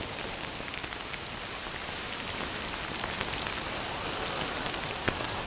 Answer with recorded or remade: recorded